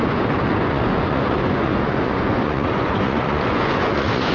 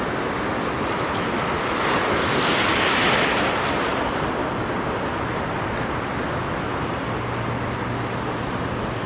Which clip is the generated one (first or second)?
first